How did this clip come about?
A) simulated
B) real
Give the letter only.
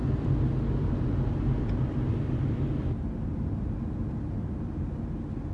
B